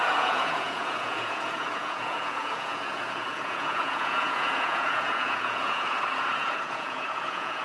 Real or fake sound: fake